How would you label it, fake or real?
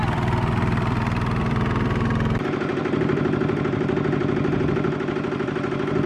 fake